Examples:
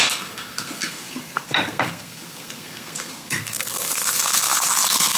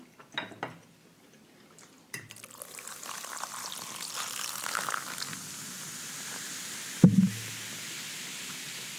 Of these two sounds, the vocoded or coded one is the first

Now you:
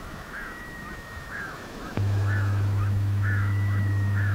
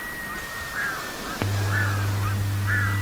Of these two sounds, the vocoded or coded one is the first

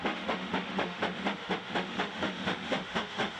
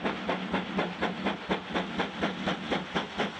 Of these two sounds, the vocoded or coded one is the first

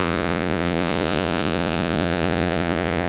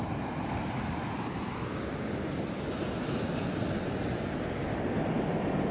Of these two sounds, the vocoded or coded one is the first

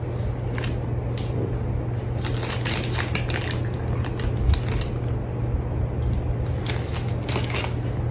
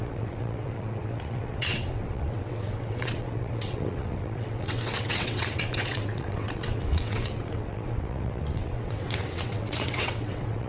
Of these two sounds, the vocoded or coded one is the second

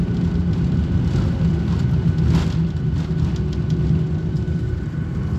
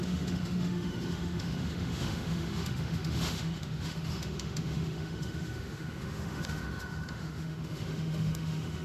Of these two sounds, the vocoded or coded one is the second